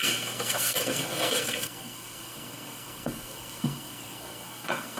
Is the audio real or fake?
fake